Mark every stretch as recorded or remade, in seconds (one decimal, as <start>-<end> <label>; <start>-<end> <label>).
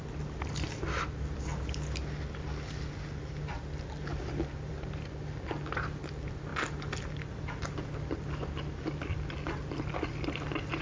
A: 0.0-4.1 recorded; 4.1-4.7 remade; 4.7-6.5 recorded; 6.5-7.4 remade; 7.4-10.8 recorded